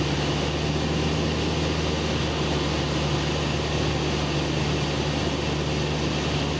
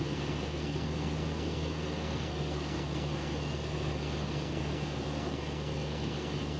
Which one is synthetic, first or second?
second